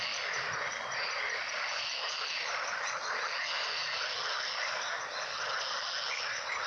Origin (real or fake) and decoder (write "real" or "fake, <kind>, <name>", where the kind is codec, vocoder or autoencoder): real